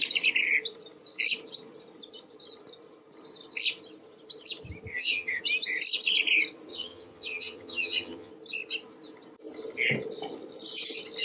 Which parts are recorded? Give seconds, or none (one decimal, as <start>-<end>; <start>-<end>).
0.0-4.9; 5.4-6.7; 8.3-11.2